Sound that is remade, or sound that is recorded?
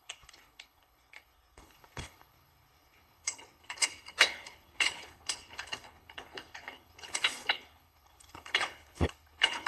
remade